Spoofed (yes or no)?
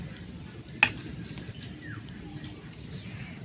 no